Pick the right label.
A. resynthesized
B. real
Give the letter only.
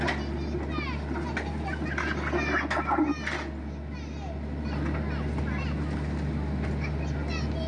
B